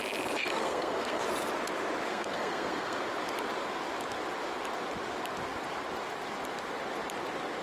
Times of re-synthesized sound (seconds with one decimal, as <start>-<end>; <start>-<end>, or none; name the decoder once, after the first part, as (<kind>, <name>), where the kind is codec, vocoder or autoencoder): 0.6-1.2 (codec, SNAC); 2.1-3.0